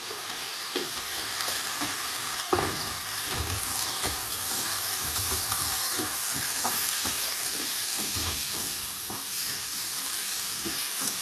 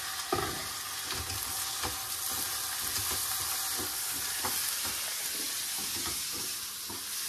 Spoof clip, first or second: first